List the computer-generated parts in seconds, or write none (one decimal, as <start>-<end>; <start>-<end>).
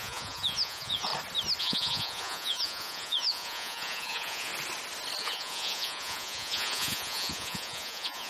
0.0-1.1; 1.6-4.5; 5.2-8.3